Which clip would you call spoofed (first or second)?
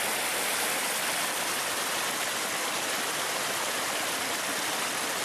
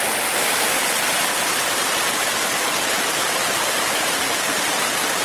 second